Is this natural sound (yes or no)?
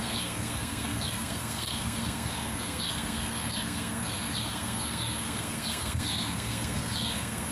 no